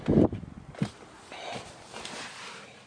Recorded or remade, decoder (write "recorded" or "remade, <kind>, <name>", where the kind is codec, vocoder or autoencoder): recorded